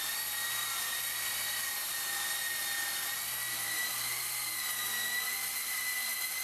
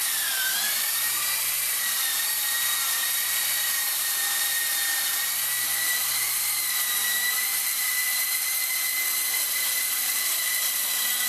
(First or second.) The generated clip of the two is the second